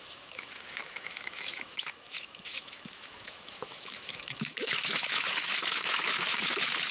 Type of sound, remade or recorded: remade